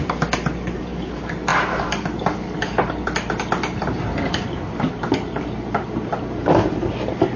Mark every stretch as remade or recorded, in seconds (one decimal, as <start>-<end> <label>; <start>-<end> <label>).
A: 0.0-7.4 recorded

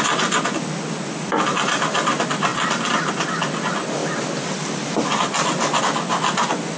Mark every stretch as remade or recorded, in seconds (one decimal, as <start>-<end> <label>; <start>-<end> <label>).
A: 0.0-2.5 recorded; 2.5-3.6 remade; 3.6-4.0 recorded; 4.0-5.8 remade; 5.8-6.8 recorded

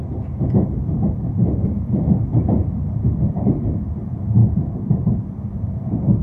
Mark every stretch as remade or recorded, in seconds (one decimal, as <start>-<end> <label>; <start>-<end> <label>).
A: 0.0-2.6 recorded; 2.6-3.8 remade; 3.8-4.4 recorded; 4.4-5.2 remade; 5.2-6.2 recorded

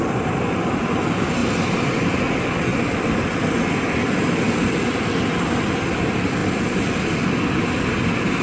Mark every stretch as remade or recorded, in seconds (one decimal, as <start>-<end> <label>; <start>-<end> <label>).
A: 0.0-1.4 recorded; 1.4-2.0 remade; 2.0-2.7 recorded; 2.7-4.8 remade; 4.8-8.4 recorded

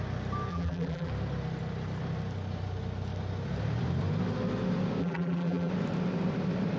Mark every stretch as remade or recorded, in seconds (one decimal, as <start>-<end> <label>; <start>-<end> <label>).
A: 0.0-0.5 recorded; 0.5-1.1 remade; 1.1-5.0 recorded; 5.0-5.7 remade; 5.7-6.8 recorded

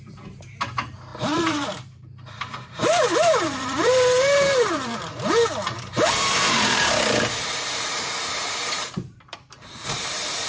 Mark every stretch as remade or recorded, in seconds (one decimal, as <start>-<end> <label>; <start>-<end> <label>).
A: 0.0-10.5 remade

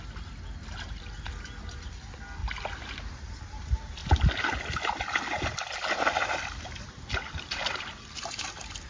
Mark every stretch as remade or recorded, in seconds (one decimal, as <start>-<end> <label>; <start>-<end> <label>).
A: 0.0-8.9 recorded

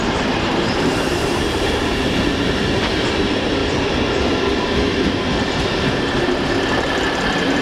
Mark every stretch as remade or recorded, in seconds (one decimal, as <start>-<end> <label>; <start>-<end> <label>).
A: 0.0-3.6 remade; 3.6-6.6 recorded; 6.6-7.6 remade